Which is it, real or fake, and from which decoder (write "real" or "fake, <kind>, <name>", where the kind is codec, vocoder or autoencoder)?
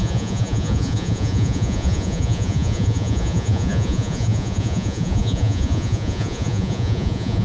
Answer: fake, vocoder, Vocos